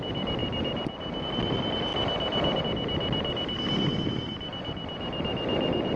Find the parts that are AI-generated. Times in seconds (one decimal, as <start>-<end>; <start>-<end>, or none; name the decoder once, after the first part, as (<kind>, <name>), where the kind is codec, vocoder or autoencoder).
none

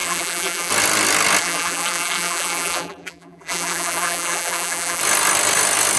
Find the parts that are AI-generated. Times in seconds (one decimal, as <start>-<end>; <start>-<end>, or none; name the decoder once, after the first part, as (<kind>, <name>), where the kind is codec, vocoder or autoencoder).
0.0-0.7 (vocoder, BigVGAN v2); 1.4-5.0

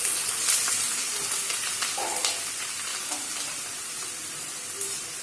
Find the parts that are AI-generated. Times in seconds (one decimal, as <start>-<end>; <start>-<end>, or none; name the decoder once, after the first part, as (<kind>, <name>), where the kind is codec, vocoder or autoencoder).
none